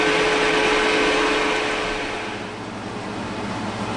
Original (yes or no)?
yes